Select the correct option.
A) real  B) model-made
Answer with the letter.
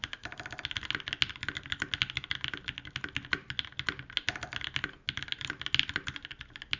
A